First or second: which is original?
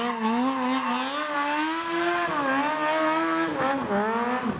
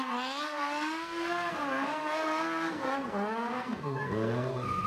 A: first